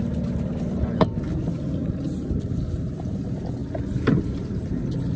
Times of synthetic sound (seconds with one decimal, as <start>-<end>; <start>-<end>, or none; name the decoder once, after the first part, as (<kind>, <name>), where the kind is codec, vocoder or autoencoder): none

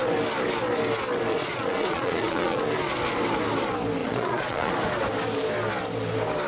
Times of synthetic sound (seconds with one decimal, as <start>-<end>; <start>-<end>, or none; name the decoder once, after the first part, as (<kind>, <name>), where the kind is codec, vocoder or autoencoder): 1.3-2.6 (vocoder, Vocos); 4.0-4.7

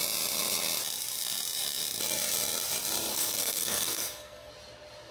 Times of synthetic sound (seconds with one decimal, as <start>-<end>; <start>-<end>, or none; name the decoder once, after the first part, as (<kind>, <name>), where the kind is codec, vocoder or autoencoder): 3.1-4.5 (codec, SNAC)